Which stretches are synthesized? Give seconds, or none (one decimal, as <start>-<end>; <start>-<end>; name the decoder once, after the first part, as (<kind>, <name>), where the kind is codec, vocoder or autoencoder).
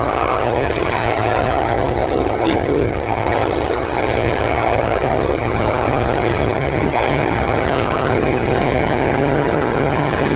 0.0-10.4 (vocoder, HiFi-GAN)